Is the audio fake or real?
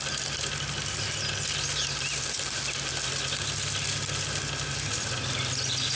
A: real